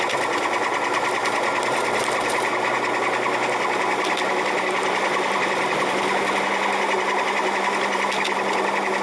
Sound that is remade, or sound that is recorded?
recorded